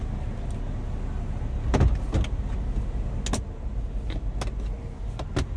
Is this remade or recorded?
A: recorded